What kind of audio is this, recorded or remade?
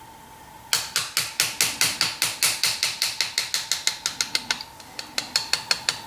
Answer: recorded